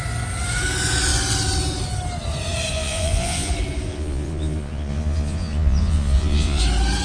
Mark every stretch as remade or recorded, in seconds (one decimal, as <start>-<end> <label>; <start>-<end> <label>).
0.0-2.7 recorded; 2.7-3.5 remade; 3.5-3.9 recorded; 3.9-6.6 remade; 6.6-7.0 recorded